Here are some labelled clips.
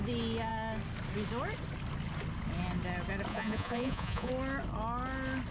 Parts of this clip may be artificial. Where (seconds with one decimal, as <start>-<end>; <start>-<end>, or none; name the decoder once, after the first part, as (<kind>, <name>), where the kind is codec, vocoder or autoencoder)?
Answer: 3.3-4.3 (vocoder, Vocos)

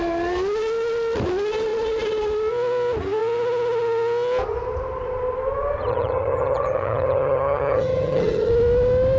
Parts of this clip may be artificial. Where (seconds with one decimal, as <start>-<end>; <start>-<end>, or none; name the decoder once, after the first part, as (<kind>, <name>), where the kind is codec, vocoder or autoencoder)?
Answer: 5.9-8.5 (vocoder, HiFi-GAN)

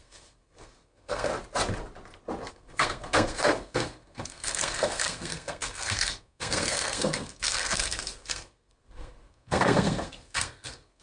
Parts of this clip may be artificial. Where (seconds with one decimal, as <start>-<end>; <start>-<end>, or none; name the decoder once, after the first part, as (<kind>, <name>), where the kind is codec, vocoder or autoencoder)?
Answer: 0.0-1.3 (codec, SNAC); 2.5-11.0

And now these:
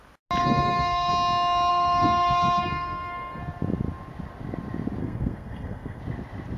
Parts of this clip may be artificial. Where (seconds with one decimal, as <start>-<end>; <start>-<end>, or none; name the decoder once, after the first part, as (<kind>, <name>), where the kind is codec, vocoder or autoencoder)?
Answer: 0.4-1.1 (codec, SNAC); 1.7-3.4; 5.0-6.0

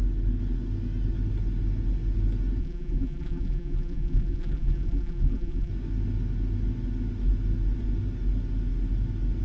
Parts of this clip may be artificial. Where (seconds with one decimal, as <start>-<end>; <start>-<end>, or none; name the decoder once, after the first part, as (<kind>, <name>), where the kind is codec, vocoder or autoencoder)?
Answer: 2.6-5.7 (vocoder, BigVGAN v2)

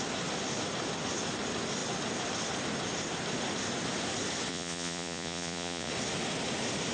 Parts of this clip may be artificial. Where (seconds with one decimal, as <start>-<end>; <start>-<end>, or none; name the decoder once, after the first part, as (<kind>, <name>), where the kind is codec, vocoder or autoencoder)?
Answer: 4.5-5.9 (vocoder, Vocos)

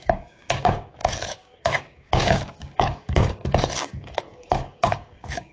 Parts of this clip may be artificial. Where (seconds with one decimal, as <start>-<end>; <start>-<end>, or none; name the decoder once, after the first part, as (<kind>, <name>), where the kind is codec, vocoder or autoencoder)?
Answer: 0.0-5.5 (codec, DAC)